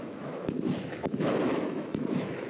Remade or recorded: remade